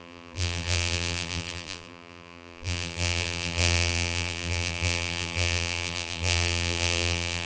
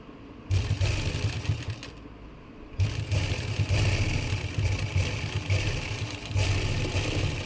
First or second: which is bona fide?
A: second